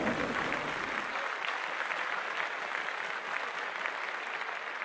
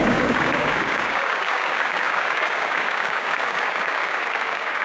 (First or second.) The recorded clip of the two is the first